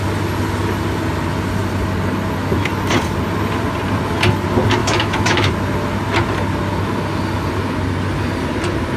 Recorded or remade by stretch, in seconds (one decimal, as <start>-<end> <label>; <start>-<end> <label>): 0.0-4.8 recorded; 4.8-5.5 remade; 5.5-9.0 recorded